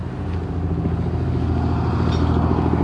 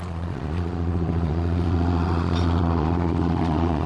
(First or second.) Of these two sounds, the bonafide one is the first